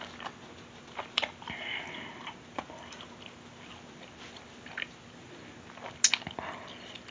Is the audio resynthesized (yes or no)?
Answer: no